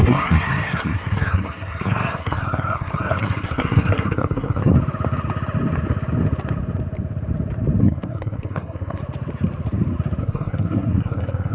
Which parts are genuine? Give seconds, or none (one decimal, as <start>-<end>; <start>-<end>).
4.7-7.8; 9.0-10.2